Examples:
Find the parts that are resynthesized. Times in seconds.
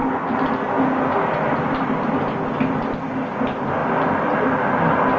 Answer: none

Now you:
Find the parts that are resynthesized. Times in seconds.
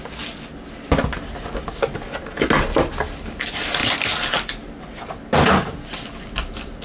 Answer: none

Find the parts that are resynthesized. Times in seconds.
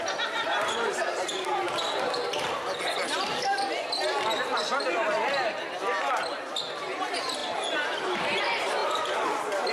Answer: none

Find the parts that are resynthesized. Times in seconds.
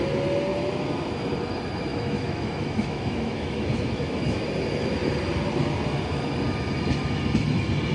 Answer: 1.9-4.5 (autoencoder, DAC-VAE)